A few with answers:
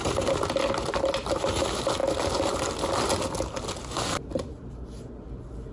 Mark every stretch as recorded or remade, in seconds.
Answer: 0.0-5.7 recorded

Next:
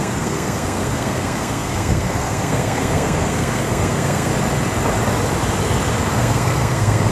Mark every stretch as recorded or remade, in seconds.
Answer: 0.0-4.3 remade; 4.3-6.0 recorded; 6.0-7.1 remade

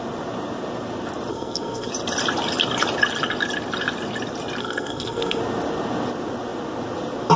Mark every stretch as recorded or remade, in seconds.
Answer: 0.0-1.3 recorded; 1.3-1.9 remade; 1.9-4.6 recorded; 4.6-5.4 remade; 5.4-7.4 recorded

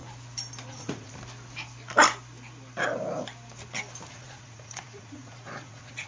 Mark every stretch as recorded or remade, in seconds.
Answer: 0.0-0.7 recorded; 0.7-1.1 remade; 1.1-4.1 recorded; 4.1-6.1 remade

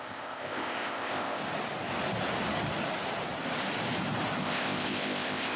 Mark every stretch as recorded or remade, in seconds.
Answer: 0.0-1.4 remade; 1.4-4.4 recorded; 4.4-5.6 remade

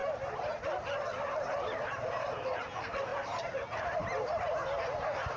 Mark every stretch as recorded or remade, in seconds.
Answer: 0.0-5.4 recorded

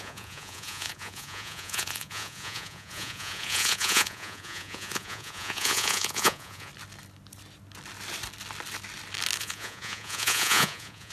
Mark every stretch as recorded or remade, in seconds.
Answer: 0.0-6.7 remade; 6.7-9.4 recorded; 9.4-11.1 remade